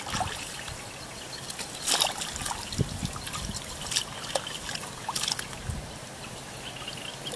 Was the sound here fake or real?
real